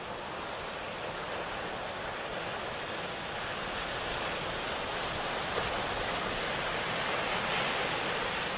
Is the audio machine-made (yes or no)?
no